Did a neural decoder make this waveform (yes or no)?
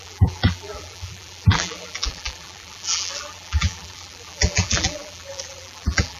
yes